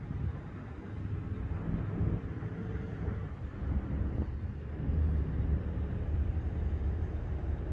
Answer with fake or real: real